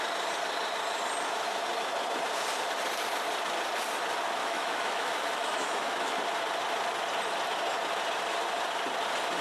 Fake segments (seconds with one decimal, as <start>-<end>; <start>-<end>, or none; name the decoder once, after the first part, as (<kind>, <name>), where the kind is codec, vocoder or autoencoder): 4.4-6.2 (autoencoder, DAC-VAE)